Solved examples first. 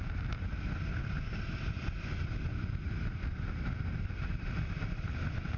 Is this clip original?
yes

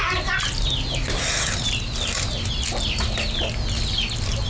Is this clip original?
yes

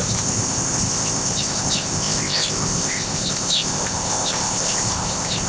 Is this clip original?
no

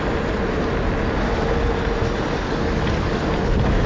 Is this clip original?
yes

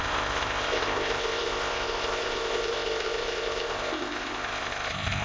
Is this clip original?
no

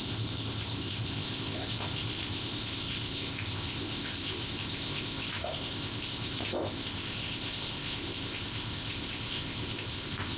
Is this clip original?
no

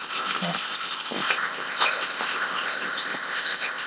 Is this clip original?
no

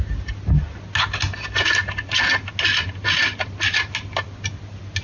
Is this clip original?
yes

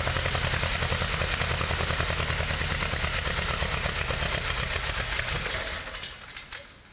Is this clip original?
yes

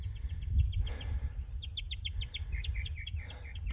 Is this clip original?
yes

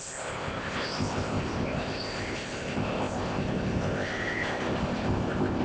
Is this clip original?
no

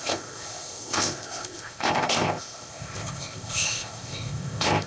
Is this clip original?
no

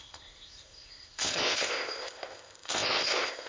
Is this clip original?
no